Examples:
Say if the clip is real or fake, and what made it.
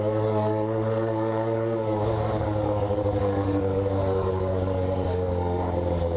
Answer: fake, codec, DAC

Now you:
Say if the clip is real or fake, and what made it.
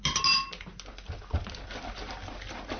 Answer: real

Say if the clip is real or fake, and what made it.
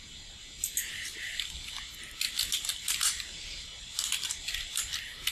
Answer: real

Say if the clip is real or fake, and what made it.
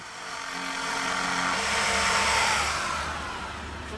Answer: real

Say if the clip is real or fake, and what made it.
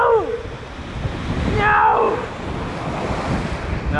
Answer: real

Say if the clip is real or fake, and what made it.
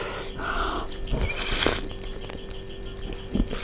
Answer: real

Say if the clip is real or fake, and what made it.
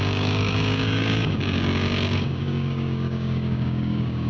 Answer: fake, codec, DAC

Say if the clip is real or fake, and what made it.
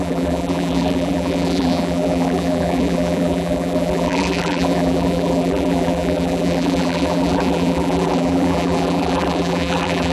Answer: fake, vocoder, BigVGAN v2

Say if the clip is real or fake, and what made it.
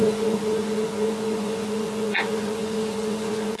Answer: fake, vocoder, Vocos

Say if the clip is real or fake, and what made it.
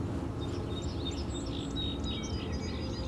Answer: real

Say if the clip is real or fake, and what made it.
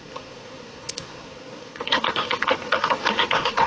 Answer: fake, codec, SNAC